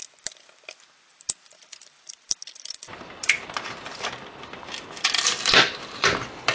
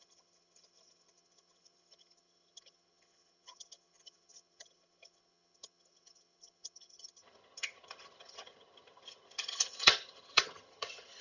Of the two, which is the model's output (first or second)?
second